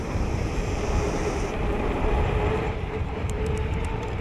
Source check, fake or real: fake